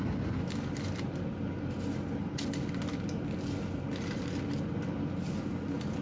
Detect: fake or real real